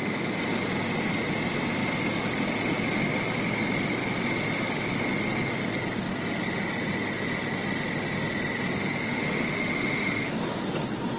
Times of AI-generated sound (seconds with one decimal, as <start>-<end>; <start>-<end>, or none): 9.0-10.3